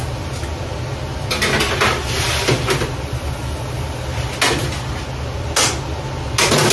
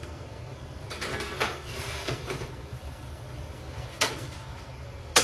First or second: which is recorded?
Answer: first